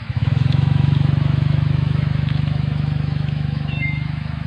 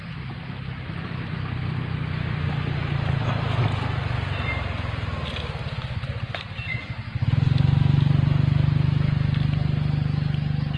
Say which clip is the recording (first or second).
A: second